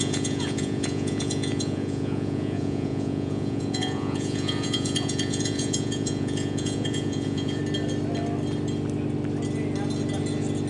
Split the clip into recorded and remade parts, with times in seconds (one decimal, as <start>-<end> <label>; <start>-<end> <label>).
0.0-7.6 remade; 7.6-10.7 recorded

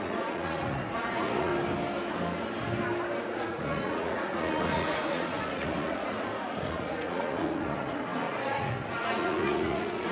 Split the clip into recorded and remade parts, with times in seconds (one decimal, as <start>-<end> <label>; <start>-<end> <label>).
0.0-1.5 remade; 1.5-3.2 recorded; 3.2-10.1 remade

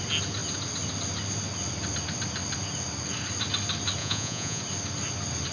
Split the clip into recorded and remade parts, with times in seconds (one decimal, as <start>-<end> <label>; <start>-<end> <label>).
0.0-4.0 recorded; 4.0-4.6 remade; 4.6-5.5 recorded

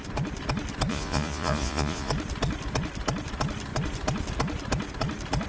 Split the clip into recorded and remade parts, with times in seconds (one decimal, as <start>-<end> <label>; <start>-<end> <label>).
0.0-0.9 recorded; 0.9-2.1 remade; 2.1-5.5 recorded

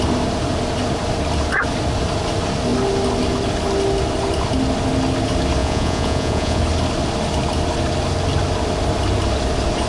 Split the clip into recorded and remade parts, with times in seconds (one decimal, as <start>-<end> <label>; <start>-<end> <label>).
0.0-5.6 recorded; 5.6-6.6 remade; 6.6-9.9 recorded

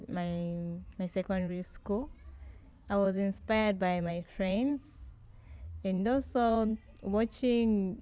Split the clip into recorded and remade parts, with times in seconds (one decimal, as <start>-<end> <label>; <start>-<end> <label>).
0.0-1.7 remade; 1.7-2.8 recorded; 2.8-6.7 remade; 6.7-8.0 recorded